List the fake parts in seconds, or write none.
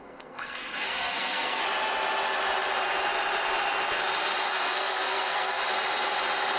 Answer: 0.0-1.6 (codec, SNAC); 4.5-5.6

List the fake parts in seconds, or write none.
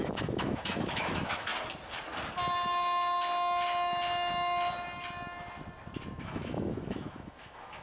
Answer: 0.0-1.5 (autoencoder, DAC-VAE); 6.2-7.8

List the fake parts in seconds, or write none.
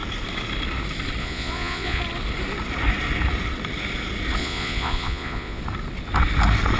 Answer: 1.2-2.0 (vocoder, Vocos); 4.4-5.6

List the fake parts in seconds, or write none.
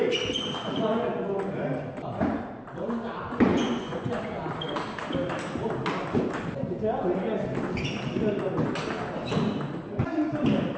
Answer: 3.5-4.1 (vocoder, Vocos)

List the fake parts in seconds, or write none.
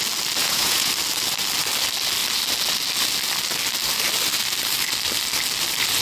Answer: 0.4-0.9 (vocoder, Vocos)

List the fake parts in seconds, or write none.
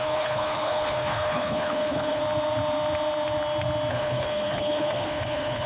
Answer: 0.0-2.2 (codec, HILCodec); 3.9-5.7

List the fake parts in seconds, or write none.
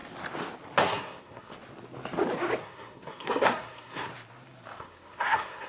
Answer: 0.8-1.5 (codec, SNAC); 2.6-4.1; 4.8-5.7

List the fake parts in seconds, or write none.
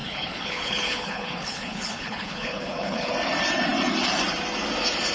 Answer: 0.0-3.1 (codec, HILCodec)